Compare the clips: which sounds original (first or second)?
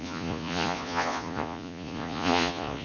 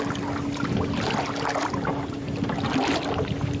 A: second